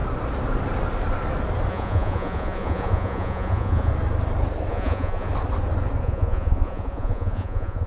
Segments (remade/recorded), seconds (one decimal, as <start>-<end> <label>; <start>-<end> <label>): 0.0-1.7 recorded; 1.7-3.9 remade; 3.9-4.7 recorded; 4.7-5.3 remade; 5.3-6.0 recorded; 6.0-7.9 remade